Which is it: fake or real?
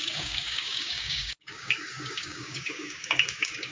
fake